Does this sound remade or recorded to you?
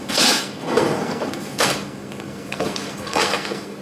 remade